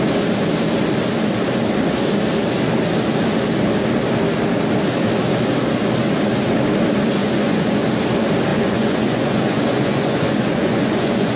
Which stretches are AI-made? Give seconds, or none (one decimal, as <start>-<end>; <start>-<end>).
7.2-7.9; 8.5-11.4